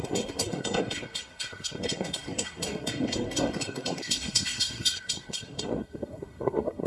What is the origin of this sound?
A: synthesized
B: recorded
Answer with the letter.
A